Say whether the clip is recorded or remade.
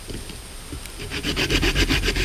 recorded